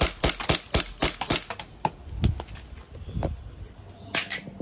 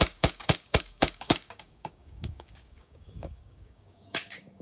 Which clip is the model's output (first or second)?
second